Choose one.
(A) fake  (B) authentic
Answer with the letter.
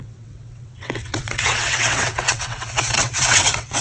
A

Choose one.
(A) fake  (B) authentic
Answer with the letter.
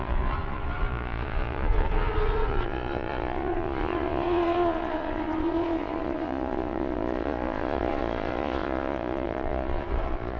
A